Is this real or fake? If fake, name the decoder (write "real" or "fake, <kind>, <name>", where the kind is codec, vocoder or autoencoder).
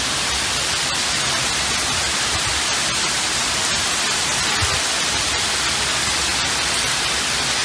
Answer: real